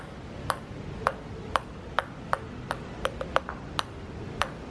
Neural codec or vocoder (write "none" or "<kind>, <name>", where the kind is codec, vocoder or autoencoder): none